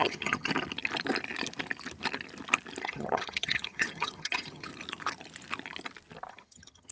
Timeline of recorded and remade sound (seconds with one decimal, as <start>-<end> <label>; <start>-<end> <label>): 0.0-0.5 remade; 0.5-2.8 recorded; 2.8-4.7 remade; 4.7-6.3 recorded; 6.3-6.9 remade